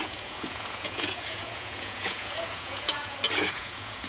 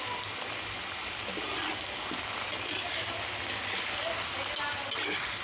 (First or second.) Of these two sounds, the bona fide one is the second